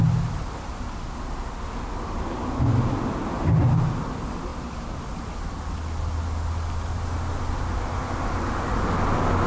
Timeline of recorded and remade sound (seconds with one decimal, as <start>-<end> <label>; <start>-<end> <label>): 0.0-4.5 recorded; 4.5-5.0 remade; 5.0-9.5 recorded